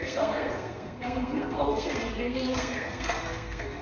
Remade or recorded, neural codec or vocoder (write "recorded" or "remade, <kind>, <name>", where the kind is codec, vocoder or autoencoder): remade, codec, SNAC